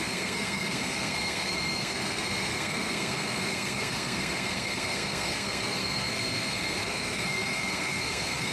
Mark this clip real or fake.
fake